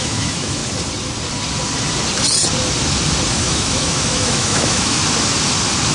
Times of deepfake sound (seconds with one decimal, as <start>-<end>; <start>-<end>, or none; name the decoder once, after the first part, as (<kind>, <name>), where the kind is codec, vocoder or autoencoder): 0.0-0.6 (autoencoder, DAC-VAE); 3.3-5.0